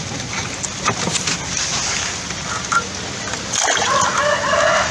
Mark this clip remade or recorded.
recorded